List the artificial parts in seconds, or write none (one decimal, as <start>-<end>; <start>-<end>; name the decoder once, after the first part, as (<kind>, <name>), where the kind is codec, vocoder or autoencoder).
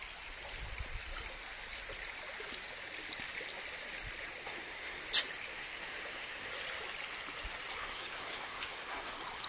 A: 4.4-5.0 (codec, SNAC); 5.5-6.5; 7.8-9.1